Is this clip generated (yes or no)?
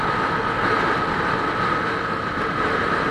no